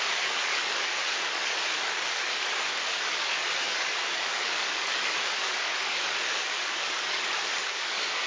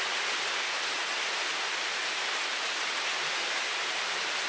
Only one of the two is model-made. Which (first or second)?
first